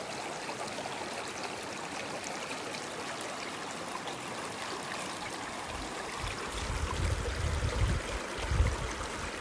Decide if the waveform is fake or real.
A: real